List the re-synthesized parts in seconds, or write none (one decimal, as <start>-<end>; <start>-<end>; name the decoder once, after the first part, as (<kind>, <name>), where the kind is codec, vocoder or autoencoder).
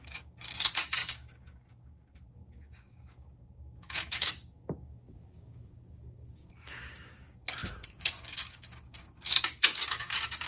0.0-10.5 (codec, DAC)